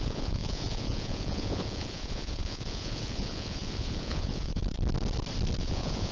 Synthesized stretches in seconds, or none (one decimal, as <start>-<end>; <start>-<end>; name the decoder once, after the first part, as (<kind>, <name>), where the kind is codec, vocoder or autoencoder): 0.0-4.6 (vocoder, Vocos); 5.6-6.1